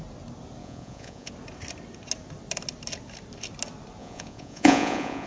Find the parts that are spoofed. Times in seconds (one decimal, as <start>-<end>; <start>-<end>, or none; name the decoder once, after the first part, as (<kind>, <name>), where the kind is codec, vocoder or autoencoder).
0.6-1.3 (vocoder, Vocos); 4.0-5.3